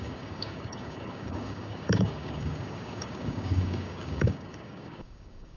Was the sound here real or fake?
fake